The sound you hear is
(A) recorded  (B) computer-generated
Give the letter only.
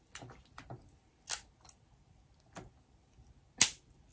A